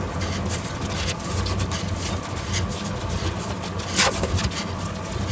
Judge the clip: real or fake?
real